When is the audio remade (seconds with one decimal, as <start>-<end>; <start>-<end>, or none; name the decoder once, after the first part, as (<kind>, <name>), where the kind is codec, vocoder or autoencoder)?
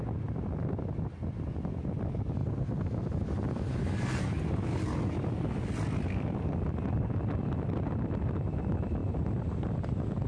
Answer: none